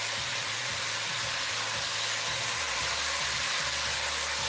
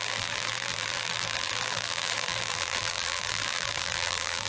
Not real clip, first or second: second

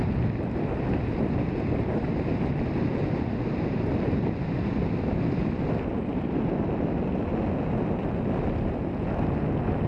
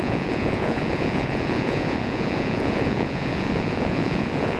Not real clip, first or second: second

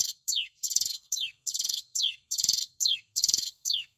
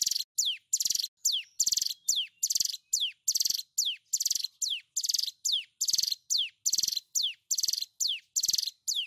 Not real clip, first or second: first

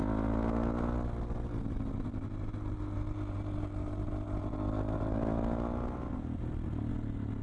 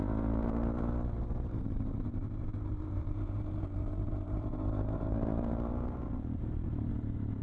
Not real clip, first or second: second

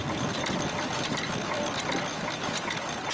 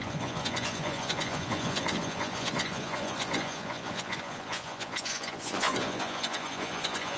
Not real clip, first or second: second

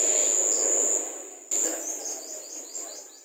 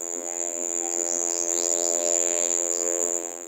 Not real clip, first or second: second